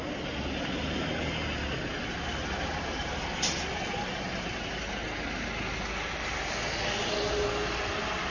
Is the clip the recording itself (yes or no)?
yes